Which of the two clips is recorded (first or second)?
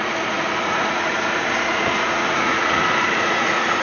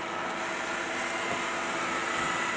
second